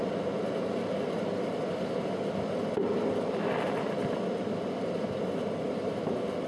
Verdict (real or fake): real